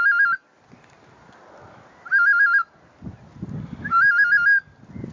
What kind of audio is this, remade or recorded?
recorded